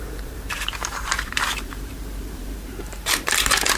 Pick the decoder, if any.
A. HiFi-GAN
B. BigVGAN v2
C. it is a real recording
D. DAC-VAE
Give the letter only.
B